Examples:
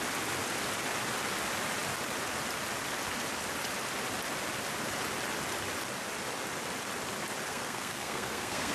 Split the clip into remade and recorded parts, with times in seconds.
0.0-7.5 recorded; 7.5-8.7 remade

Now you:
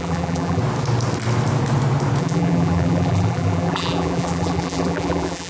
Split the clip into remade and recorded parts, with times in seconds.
0.0-0.6 remade; 0.6-2.2 recorded; 2.2-5.5 remade

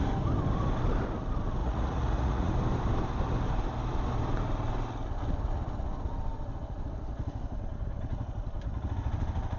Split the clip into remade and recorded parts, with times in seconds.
0.0-1.6 recorded; 1.6-2.5 remade; 2.5-9.6 recorded